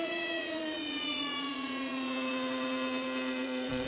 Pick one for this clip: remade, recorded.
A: remade